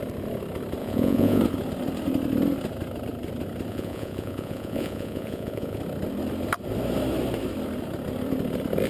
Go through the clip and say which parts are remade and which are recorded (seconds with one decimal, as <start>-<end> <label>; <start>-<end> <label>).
0.0-0.8 recorded; 0.8-1.4 remade; 1.4-3.7 recorded; 3.7-5.8 remade; 5.8-8.9 recorded